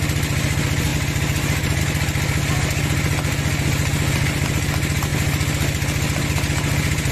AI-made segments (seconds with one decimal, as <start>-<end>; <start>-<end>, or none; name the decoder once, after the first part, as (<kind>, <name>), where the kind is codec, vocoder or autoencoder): none